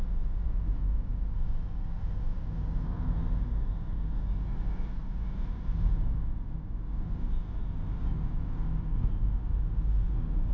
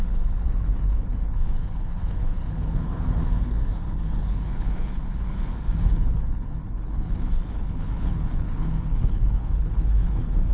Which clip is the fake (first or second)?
second